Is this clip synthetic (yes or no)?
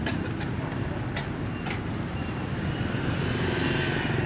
no